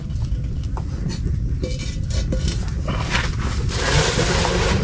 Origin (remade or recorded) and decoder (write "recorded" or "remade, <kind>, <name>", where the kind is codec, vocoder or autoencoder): recorded